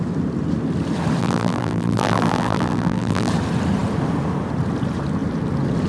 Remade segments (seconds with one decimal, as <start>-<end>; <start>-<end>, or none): 1.2-3.3